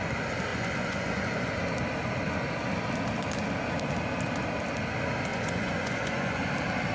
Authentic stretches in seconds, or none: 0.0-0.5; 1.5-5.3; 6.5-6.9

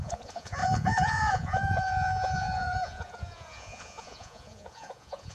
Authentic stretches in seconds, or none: none

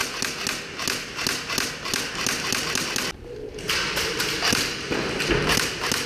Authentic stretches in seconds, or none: 0.0-6.1

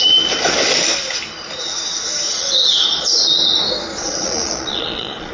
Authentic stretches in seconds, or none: 0.0-2.3; 3.1-3.9